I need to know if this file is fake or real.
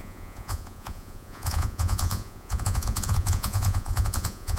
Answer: fake